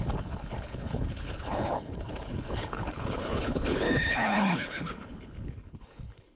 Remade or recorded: remade